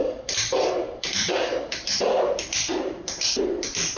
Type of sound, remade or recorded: remade